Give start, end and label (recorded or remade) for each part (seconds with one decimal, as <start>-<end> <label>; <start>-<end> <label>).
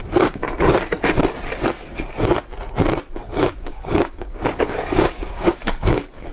0.0-0.4 remade; 0.4-3.2 recorded; 3.2-6.3 remade